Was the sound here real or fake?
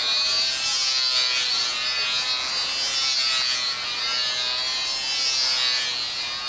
real